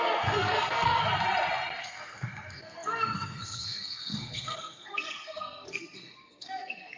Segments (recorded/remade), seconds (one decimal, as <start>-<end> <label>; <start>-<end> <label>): 0.0-1.0 remade; 1.0-1.8 recorded; 1.8-7.0 remade